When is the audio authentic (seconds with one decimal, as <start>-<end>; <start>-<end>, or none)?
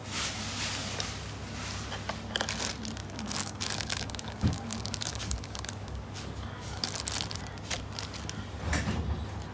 0.0-3.0; 6.9-9.5